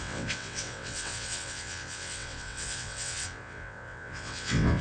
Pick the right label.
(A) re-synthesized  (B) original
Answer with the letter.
A